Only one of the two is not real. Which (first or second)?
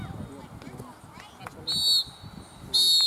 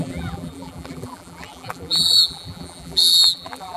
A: second